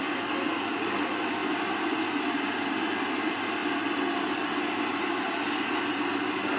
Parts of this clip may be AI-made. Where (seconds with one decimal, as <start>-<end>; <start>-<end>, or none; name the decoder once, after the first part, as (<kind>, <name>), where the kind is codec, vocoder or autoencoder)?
none

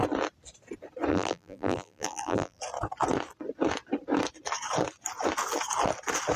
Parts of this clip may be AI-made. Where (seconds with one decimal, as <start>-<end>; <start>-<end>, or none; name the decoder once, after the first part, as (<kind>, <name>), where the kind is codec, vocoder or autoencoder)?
1.1-2.6 (vocoder, BigVGAN v2)

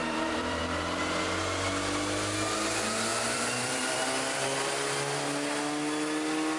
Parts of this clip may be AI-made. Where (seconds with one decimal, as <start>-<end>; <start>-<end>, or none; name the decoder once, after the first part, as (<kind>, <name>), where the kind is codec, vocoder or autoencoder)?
0.0-0.6 (vocoder, BigVGAN v2); 3.1-4.0

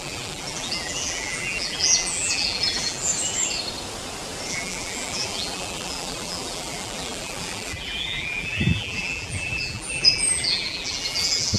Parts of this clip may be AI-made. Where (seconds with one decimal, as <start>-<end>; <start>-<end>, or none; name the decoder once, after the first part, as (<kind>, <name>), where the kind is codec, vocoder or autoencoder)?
0.0-3.1 (vocoder, BigVGAN v2); 4.5-11.6